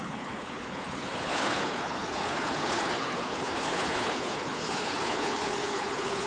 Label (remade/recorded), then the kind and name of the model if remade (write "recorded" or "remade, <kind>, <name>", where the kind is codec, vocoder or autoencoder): remade, codec, HILCodec